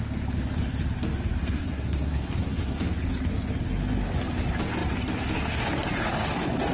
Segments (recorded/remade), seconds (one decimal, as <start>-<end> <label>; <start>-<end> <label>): 0.0-1.4 recorded; 1.4-2.8 remade; 2.8-6.7 recorded